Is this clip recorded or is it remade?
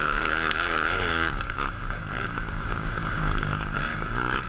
remade